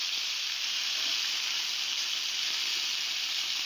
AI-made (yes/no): no